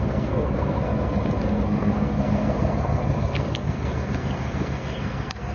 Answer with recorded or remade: remade